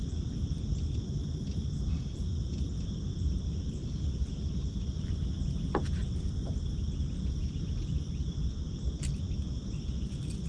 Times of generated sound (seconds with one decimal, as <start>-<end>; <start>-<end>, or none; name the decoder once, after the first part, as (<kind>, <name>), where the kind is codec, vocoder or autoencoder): none